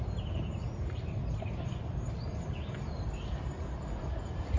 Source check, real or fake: real